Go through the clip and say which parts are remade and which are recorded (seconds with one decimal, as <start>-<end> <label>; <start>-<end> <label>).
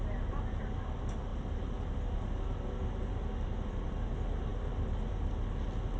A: 0.0-6.0 recorded